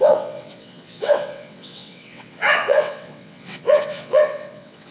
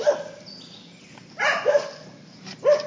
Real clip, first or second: second